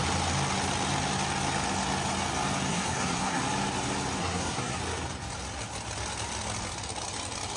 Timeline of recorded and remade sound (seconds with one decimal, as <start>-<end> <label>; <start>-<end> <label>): 0.0-2.7 recorded; 2.7-3.4 remade; 3.4-4.2 recorded; 4.2-4.8 remade; 4.8-7.6 recorded